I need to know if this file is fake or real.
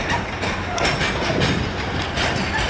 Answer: real